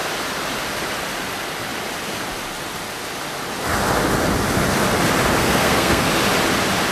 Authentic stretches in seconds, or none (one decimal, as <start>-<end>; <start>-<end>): 0.0-5.4; 6.1-6.9